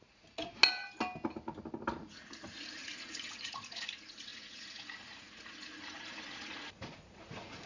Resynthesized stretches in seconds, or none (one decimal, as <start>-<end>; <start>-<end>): 0.0-0.6; 2.0-7.7